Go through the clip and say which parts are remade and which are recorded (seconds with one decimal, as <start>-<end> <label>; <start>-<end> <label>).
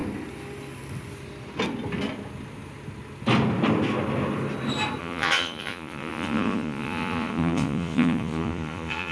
0.0-5.0 recorded; 5.0-9.1 remade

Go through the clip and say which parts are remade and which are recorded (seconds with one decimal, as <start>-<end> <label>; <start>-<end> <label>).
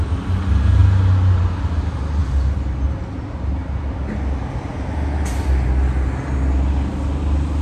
0.0-7.6 recorded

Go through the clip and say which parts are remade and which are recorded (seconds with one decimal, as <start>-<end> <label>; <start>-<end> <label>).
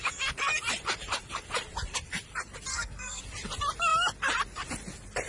0.0-2.7 recorded; 2.7-3.2 remade; 3.2-5.3 recorded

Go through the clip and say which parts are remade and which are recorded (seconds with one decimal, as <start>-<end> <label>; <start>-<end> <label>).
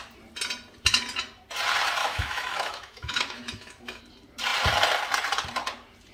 0.0-2.0 recorded; 2.0-4.0 remade; 4.0-6.1 recorded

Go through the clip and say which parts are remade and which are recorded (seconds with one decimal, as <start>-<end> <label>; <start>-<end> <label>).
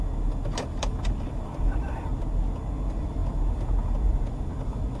0.0-0.5 recorded; 0.5-2.2 remade; 2.2-5.0 recorded